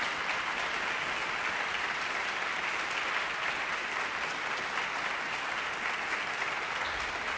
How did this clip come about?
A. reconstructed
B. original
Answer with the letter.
B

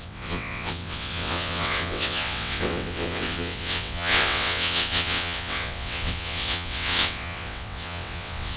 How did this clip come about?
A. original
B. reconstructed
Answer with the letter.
B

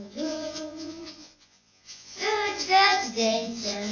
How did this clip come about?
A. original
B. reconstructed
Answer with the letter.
B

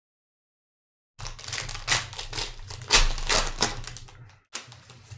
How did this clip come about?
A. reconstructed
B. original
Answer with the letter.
B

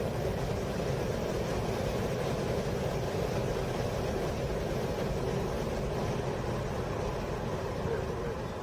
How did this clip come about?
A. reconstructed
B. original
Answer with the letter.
B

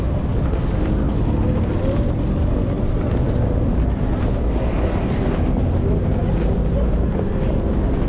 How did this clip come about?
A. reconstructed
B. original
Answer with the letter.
B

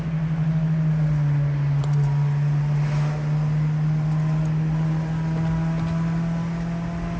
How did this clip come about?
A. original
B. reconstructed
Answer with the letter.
A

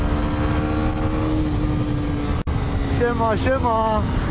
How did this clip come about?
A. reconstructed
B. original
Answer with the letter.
B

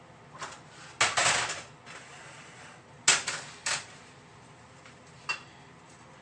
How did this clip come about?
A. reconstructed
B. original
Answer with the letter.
B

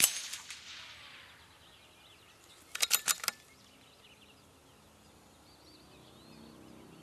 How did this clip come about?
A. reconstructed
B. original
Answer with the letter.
B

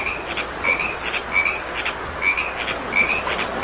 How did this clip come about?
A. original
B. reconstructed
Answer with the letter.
A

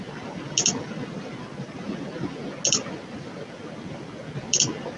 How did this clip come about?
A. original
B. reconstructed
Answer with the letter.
A